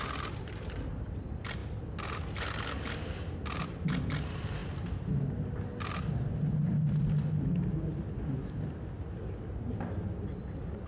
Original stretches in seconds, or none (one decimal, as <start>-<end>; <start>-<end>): 0.0-10.9